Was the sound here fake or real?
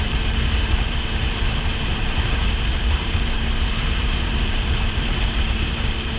fake